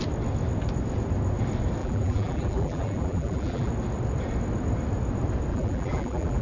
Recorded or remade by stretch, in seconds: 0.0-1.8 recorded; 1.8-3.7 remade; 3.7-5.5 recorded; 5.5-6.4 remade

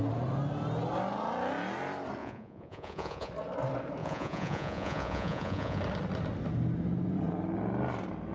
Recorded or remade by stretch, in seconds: 0.0-2.2 recorded; 2.2-3.3 remade; 3.3-4.0 recorded; 4.0-5.8 remade; 5.8-8.3 recorded